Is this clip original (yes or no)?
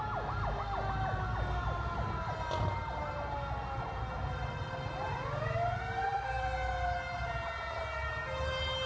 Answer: yes